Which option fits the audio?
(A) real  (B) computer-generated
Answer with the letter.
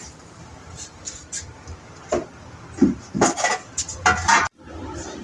B